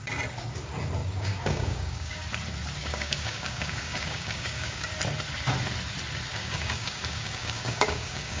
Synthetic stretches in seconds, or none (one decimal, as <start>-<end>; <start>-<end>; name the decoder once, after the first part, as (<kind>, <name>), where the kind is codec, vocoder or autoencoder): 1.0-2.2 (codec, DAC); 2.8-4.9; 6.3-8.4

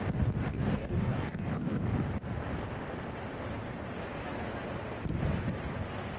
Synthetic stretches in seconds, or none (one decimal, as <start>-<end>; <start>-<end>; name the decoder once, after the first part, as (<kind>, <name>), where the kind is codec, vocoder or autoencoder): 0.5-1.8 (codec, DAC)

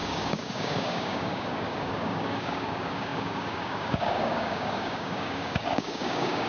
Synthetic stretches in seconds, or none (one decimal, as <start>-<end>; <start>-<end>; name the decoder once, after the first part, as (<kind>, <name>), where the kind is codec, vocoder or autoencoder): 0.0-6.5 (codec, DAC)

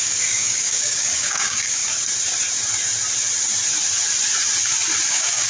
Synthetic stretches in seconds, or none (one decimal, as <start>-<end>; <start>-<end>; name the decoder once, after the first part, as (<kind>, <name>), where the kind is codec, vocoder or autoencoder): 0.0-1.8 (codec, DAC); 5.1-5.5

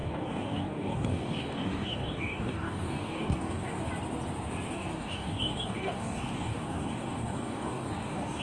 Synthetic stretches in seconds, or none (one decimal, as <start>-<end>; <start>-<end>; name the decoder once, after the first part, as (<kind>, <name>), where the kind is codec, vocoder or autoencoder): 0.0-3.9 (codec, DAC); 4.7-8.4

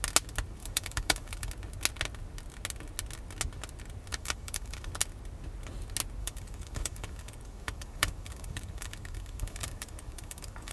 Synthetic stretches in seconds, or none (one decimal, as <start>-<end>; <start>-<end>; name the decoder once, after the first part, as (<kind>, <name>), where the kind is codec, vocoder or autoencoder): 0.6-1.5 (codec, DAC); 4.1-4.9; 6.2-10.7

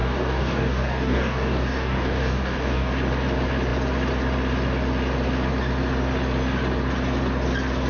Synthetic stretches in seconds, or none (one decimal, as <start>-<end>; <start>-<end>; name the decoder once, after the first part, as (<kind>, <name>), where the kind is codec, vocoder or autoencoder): 0.0-2.9 (codec, DAC)